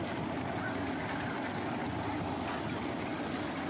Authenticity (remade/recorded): recorded